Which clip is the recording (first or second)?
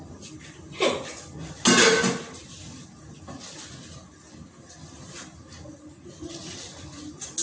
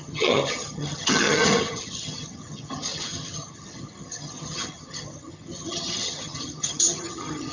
first